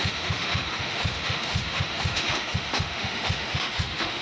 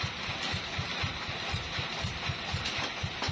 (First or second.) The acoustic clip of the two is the second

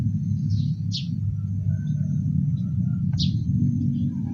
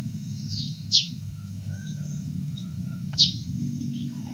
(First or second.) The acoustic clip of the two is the first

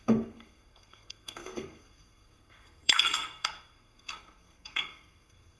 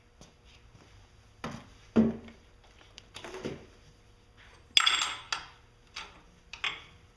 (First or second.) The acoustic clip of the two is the second